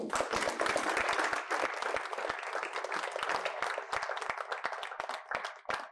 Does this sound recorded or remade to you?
recorded